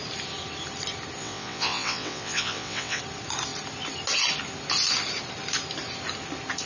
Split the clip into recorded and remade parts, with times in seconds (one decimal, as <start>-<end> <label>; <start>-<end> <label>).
0.0-1.2 recorded; 1.2-3.0 remade; 3.0-6.7 recorded